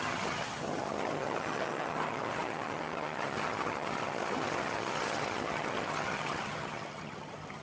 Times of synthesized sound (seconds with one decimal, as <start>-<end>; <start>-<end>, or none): 0.0-7.6